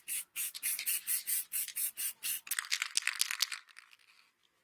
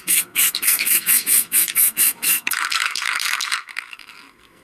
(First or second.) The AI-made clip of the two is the second